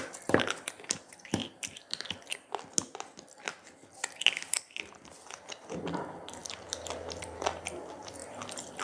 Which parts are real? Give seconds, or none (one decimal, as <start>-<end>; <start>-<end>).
1.4-4.6; 6.4-7.2